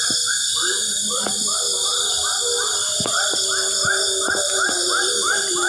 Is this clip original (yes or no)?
yes